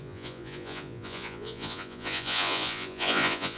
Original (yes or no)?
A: no